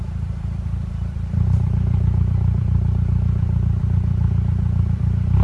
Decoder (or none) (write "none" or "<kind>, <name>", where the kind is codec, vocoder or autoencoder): vocoder, BigVGAN v2